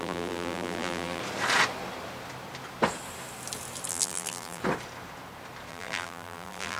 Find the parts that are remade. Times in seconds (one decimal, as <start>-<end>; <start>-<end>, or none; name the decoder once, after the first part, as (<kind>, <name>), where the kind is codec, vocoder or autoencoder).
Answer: 0.0-1.2 (vocoder, BigVGAN v2); 3.9-4.6; 5.7-6.8